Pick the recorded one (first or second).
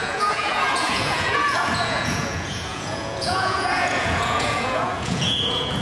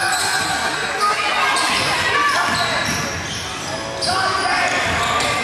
second